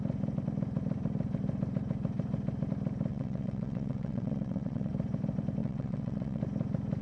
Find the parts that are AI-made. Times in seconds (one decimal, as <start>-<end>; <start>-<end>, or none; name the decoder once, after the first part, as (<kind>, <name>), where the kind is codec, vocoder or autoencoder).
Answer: 3.1-4.9 (vocoder, WaveNeXt); 5.6-6.4